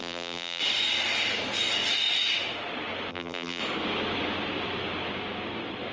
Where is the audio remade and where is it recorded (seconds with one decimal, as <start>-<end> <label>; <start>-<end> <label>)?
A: 0.0-0.6 remade; 0.6-3.1 recorded; 3.1-3.6 remade; 3.6-5.9 recorded